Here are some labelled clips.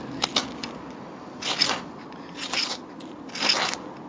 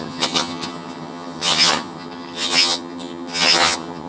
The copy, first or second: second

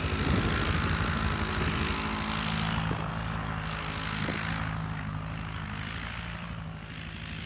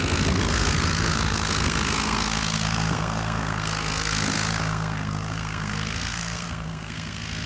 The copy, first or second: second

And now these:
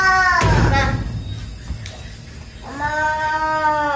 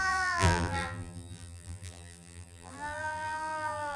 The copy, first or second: second